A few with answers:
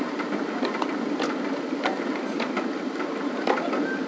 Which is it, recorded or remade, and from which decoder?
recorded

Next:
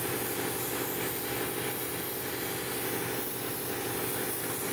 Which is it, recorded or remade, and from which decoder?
recorded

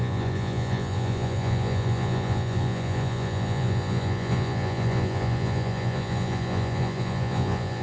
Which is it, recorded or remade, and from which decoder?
remade, vocoder, Vocos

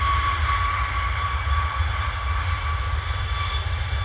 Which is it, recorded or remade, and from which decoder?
recorded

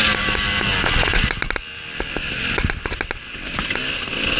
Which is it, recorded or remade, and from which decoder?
recorded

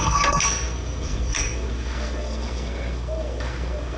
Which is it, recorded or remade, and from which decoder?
remade, codec, SNAC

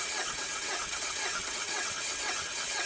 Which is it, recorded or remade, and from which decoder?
remade, vocoder, WaveNeXt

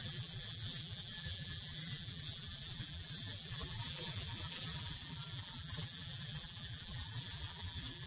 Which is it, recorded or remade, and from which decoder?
remade, vocoder, BigVGAN v2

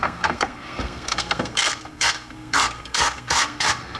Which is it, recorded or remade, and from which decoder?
remade, codec, SNAC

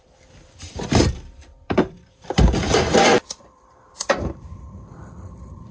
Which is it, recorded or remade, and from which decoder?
remade, vocoder, BigVGAN v2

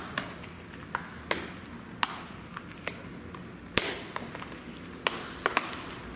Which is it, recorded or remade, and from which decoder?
recorded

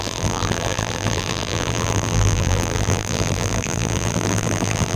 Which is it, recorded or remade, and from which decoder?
remade, vocoder, BigVGAN v2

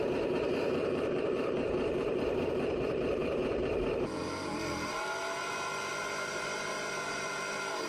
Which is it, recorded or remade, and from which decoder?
remade, vocoder, BigVGAN v2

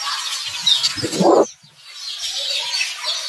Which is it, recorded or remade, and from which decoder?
recorded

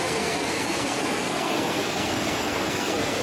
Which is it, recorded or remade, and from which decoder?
remade, codec, SNAC